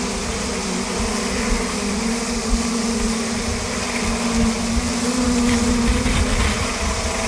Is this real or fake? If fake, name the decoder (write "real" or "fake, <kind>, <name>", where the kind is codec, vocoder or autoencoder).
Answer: real